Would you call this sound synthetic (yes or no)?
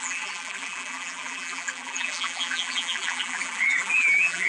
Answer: yes